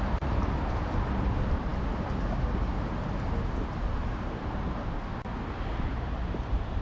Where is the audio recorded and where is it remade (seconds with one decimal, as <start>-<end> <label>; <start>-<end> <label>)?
0.0-6.8 recorded